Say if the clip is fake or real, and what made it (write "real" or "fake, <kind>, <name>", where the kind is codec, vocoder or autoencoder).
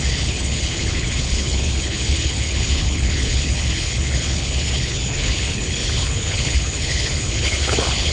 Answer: fake, codec, HILCodec